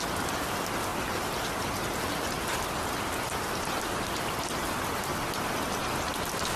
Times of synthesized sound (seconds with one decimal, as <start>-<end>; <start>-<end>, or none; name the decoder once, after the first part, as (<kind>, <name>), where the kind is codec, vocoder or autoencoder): none